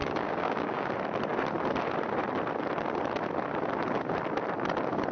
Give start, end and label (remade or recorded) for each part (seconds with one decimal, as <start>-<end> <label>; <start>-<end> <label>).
0.0-0.9 remade; 0.9-5.1 recorded